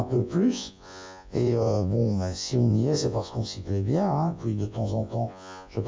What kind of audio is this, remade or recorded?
remade